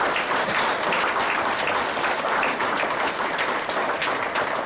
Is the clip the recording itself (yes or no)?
yes